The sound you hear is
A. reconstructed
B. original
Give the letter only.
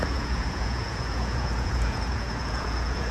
A